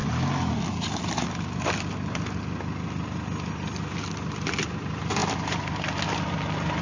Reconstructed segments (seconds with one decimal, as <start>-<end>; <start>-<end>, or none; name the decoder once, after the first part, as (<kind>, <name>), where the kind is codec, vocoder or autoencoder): none